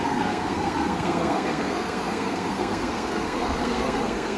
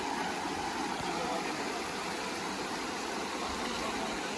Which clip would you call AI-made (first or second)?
first